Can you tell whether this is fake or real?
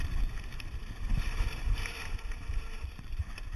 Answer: fake